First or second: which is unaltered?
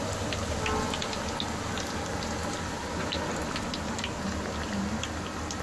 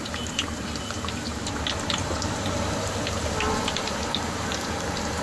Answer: first